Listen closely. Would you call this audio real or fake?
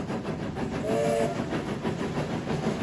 real